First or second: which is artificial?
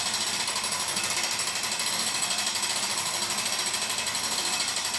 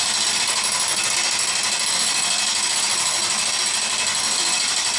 first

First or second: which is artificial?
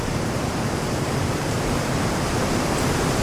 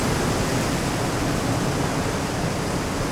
first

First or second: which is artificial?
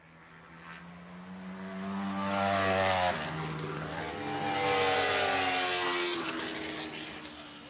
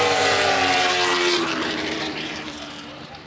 second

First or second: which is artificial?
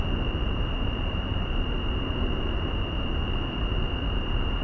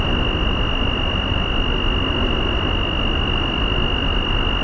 first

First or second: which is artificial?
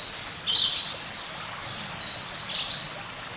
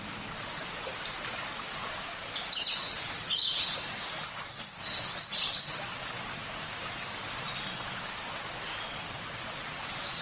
first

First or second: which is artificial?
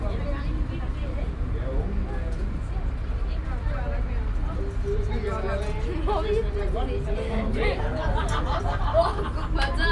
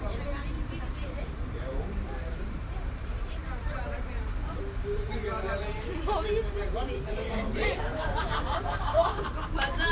second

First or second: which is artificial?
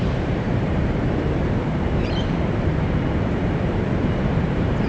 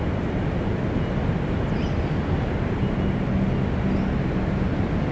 first